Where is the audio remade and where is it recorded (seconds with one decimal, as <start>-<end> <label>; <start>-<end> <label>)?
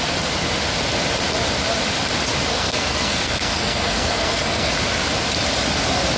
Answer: 0.0-2.5 recorded; 2.5-4.7 remade; 4.7-6.2 recorded